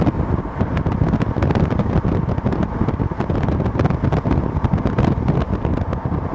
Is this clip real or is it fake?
real